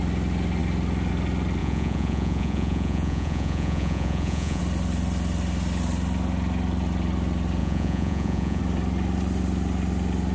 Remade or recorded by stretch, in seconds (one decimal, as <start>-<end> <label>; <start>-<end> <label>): 0.0-1.6 recorded; 1.6-4.6 remade; 4.6-7.6 recorded; 7.6-8.6 remade; 8.6-10.3 recorded